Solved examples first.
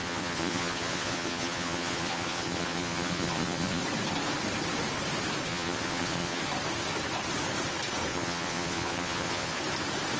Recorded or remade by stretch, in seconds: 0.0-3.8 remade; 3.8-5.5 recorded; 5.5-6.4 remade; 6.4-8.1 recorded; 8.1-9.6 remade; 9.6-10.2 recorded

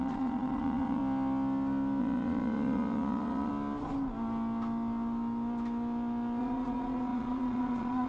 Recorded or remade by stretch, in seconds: 0.0-1.0 remade; 1.0-2.0 recorded; 2.0-3.5 remade; 3.5-6.4 recorded; 6.4-8.1 remade

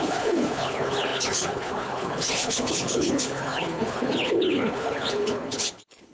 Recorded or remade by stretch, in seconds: 0.0-6.1 remade

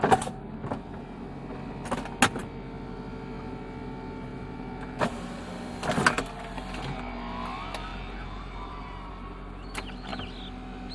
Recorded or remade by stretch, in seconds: 0.0-4.3 recorded; 4.3-5.5 remade; 5.5-7.9 recorded; 7.9-9.1 remade; 9.1-10.9 recorded

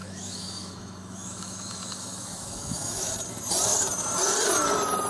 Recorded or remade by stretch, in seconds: 0.0-3.1 remade; 3.1-5.1 recorded

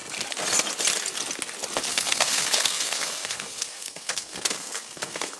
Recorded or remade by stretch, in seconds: 0.0-1.9 recorded; 1.9-5.4 remade